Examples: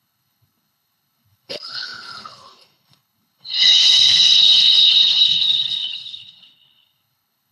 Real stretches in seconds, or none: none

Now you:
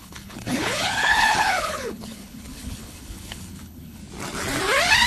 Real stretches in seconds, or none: 4.0-5.1